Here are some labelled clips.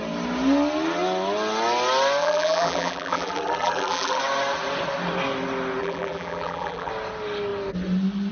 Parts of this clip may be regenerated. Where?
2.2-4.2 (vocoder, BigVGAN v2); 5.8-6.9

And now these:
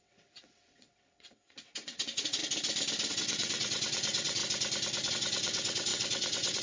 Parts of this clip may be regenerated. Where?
0.0-2.4 (vocoder, WaveNeXt); 3.1-4.4; 5.1-6.6

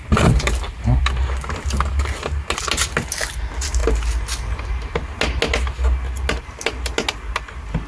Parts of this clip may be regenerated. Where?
none

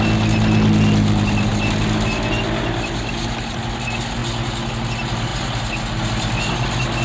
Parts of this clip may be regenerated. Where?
none

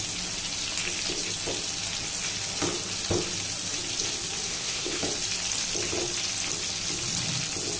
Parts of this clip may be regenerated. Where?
4.5-5.0 (codec, SNAC)